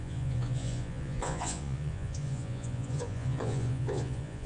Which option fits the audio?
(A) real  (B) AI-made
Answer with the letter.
B